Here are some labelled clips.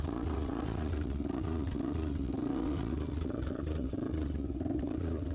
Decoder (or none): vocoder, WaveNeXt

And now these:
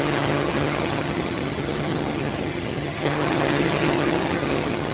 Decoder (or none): vocoder, HiFi-GAN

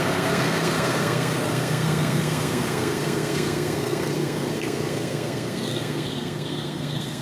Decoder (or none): codec, SNAC